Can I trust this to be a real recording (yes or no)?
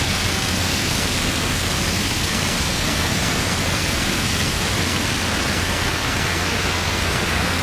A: no